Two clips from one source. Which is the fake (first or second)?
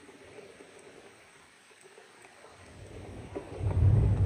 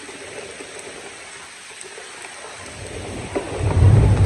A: first